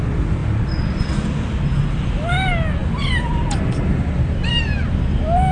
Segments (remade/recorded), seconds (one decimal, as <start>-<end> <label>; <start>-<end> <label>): 0.0-5.5 recorded